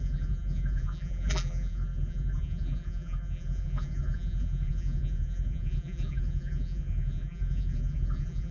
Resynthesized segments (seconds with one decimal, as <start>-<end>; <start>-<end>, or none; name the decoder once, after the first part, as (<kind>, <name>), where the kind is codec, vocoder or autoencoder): 0.0-8.5 (vocoder, BigVGAN v2)